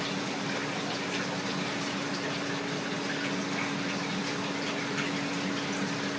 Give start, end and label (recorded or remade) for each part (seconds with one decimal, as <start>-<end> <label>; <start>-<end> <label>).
0.0-6.2 recorded